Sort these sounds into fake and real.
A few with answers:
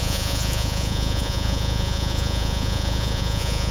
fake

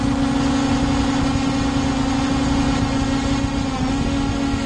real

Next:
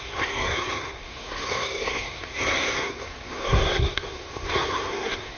fake